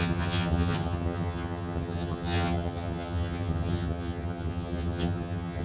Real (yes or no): no